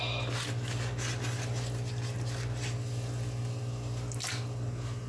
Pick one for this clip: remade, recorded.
recorded